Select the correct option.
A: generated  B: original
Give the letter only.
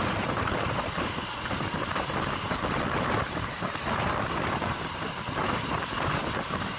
B